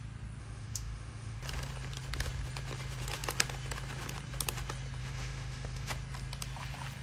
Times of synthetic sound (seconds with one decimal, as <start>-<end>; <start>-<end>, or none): 0.4-1.4; 5.0-5.9

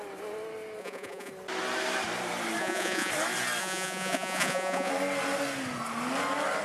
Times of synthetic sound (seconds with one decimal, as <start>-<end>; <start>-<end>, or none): 0.8-1.3; 2.6-3.1; 3.6-4.9

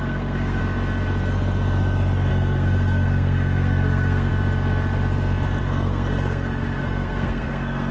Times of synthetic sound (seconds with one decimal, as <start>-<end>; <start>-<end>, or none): 0.0-0.6; 2.3-4.3; 5.6-7.9